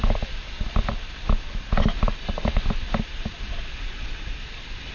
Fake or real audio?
real